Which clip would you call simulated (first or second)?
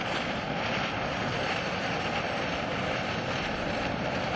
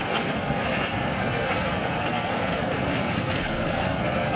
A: second